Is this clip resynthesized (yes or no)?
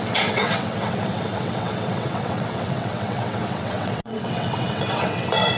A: yes